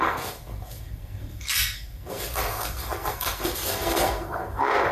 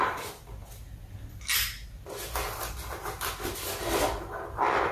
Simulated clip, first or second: first